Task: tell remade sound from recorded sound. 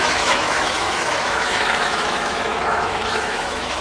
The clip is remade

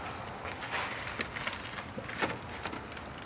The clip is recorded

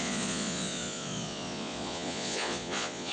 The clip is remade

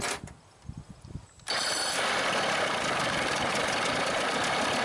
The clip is recorded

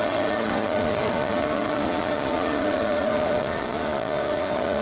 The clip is remade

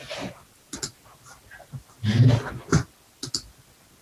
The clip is recorded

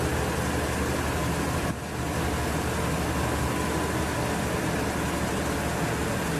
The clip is recorded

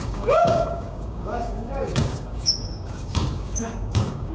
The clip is remade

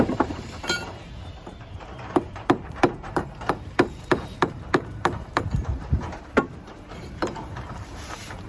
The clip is remade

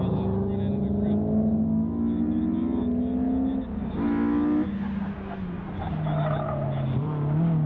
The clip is recorded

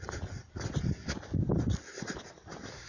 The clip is recorded